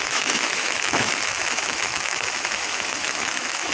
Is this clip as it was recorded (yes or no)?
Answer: no